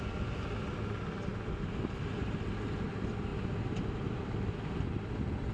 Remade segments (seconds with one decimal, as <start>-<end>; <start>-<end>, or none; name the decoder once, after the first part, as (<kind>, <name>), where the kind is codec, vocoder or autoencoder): none